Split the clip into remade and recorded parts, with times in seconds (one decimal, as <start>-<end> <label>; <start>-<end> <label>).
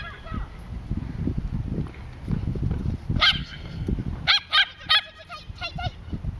0.0-3.4 recorded; 3.4-3.9 remade; 3.9-6.4 recorded